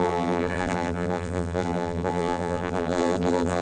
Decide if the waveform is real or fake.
fake